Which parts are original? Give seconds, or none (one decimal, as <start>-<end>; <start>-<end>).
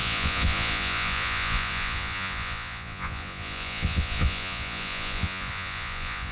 none